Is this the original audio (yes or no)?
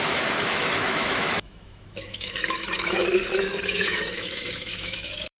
no